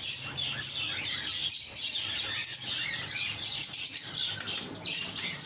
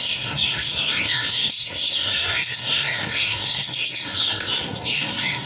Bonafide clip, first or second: first